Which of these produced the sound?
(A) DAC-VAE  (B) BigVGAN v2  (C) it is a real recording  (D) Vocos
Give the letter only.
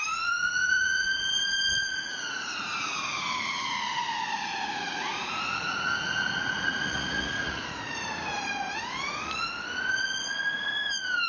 D